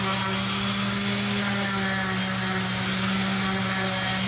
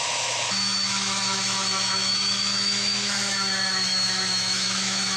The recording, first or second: first